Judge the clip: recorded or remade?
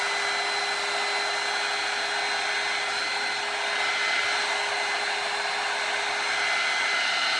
recorded